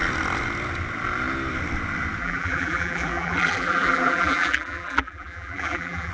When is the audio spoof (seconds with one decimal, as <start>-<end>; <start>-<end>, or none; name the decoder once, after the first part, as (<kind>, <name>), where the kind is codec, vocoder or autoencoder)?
2.2-6.1 (vocoder, BigVGAN v2)